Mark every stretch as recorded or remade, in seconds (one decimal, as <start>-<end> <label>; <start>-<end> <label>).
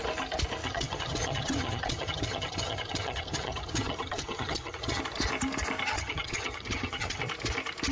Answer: 0.0-0.6 recorded; 0.6-5.0 remade; 5.0-5.9 recorded; 5.9-7.2 remade; 7.2-7.9 recorded